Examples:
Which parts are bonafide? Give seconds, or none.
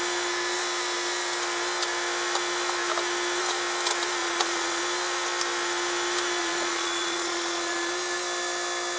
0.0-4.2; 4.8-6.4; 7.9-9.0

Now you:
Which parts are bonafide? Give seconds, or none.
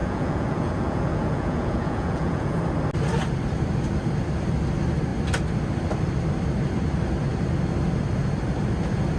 2.6-9.2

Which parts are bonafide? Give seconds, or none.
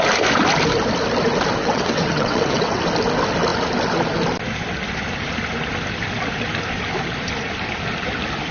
0.0-1.6; 2.8-8.5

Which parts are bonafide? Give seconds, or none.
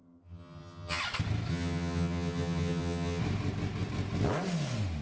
1.0-1.5; 3.2-5.0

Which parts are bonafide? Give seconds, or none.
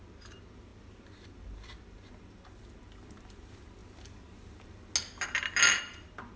0.0-6.4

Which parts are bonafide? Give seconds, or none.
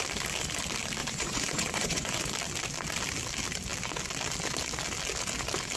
0.0-1.0; 2.2-5.8